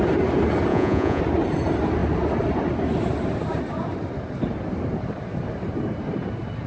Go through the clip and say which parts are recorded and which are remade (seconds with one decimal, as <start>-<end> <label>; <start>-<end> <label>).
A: 0.0-0.7 recorded; 0.7-1.2 remade; 1.2-6.7 recorded